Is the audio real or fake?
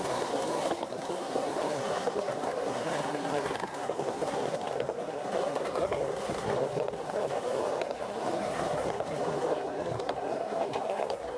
fake